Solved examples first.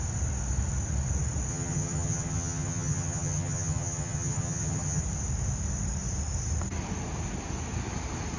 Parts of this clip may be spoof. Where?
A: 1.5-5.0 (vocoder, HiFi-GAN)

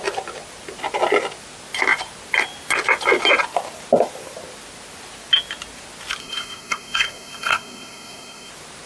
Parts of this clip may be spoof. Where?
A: 6.2-8.5 (codec, SNAC)

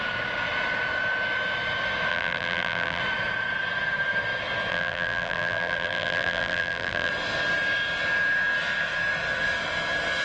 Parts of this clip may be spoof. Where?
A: 2.1-3.0 (vocoder, BigVGAN v2); 4.7-7.1

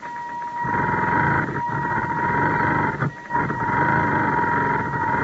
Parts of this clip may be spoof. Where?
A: none